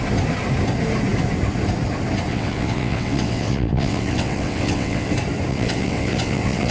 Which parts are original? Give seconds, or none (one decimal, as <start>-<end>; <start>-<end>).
0.0-2.3; 5.1-5.5